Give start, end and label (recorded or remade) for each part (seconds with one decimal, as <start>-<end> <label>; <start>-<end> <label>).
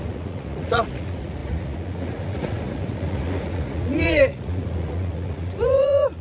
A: 0.0-6.2 remade